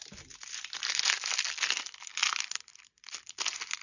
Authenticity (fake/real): real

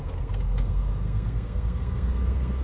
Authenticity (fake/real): fake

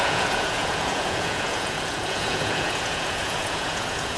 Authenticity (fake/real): fake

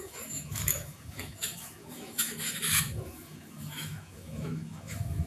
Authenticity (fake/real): fake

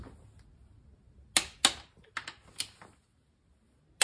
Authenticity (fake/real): real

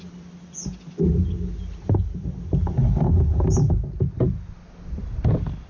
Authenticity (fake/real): real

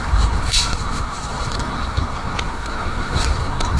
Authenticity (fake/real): fake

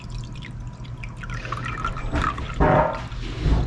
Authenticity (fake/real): real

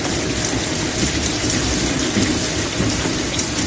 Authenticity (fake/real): real